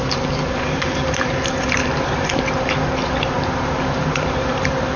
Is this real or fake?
fake